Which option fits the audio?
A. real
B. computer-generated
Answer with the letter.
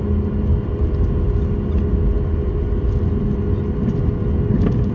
A